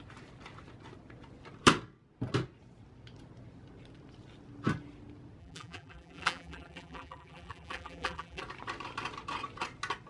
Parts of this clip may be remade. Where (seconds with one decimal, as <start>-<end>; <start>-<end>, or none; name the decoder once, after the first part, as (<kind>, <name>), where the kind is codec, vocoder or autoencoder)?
5.4-8.4 (vocoder, BigVGAN v2)